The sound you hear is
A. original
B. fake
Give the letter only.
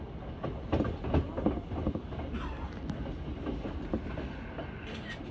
A